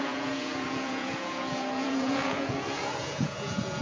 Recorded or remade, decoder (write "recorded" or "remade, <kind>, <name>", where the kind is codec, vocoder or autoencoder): remade, vocoder, Vocos